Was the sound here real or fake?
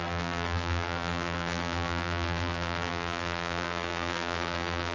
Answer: fake